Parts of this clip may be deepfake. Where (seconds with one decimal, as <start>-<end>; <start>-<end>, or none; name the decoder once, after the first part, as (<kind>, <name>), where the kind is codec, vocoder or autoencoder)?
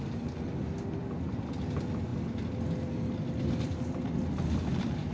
none